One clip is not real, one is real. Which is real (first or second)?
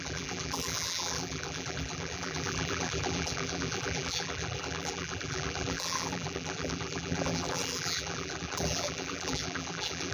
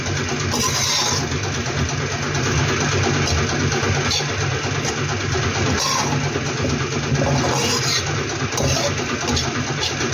second